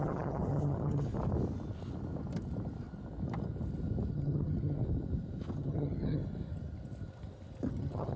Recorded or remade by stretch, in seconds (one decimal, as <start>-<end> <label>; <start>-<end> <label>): 0.0-1.1 remade; 1.1-4.1 recorded; 4.1-4.8 remade; 4.8-5.5 recorded; 5.5-6.2 remade; 6.2-7.7 recorded; 7.7-8.2 remade